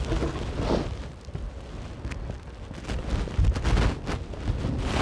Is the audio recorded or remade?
recorded